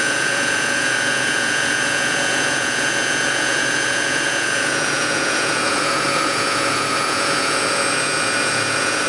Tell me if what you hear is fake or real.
fake